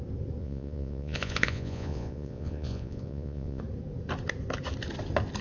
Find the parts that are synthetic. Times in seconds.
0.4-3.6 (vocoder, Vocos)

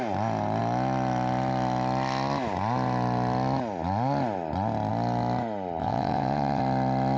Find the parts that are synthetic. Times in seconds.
5.8-6.6 (vocoder, WaveNeXt)

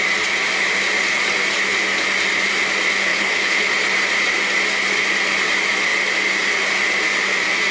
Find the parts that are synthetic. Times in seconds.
3.1-3.7 (codec, HILCodec)

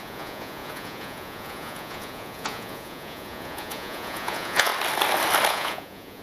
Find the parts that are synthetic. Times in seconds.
0.0-4.7 (vocoder, Vocos); 5.5-6.2

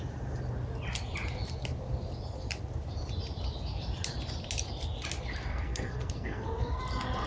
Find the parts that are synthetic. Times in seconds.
5.5-6.8 (codec, SNAC)

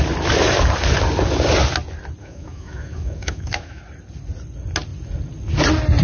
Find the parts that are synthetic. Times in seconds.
2.2-3.8 (autoencoder, DAC-VAE)

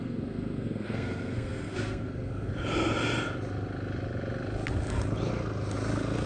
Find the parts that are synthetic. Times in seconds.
0.0-2.5 (codec, SNAC)

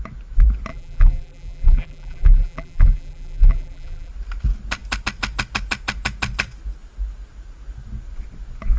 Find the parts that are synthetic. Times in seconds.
0.7-4.1 (vocoder, BigVGAN v2)